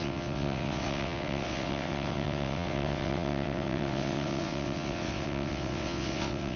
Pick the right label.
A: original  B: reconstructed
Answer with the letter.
B